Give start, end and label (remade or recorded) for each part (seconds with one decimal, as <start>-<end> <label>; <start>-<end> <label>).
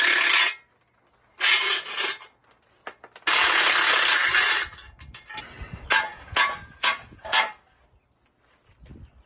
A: 0.0-6.1 recorded; 6.1-7.4 remade; 7.4-9.3 recorded